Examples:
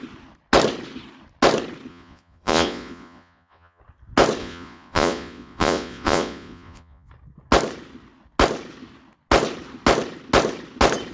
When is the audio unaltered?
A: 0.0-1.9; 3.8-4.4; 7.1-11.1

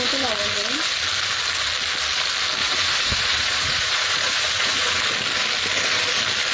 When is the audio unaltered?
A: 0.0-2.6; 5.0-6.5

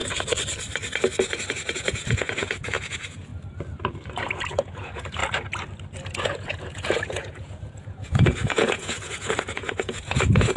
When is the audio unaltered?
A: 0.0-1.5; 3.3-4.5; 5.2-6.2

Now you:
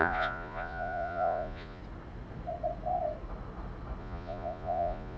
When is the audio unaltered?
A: 1.8-4.0